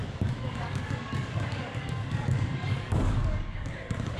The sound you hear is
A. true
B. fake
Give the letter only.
B